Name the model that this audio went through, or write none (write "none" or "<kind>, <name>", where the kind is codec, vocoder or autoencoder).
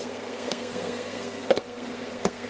codec, SNAC